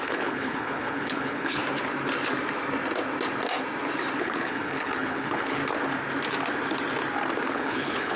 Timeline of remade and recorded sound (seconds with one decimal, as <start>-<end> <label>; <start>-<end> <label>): 0.0-1.6 remade; 1.6-4.2 recorded; 4.2-5.6 remade; 5.6-7.5 recorded; 7.5-8.2 remade